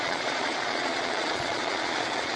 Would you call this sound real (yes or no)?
no